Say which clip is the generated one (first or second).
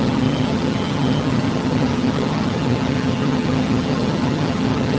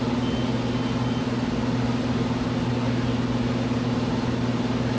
first